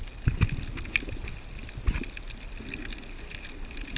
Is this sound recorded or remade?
recorded